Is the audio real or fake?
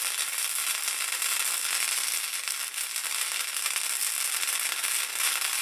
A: real